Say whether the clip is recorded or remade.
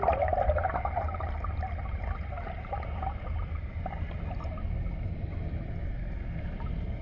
recorded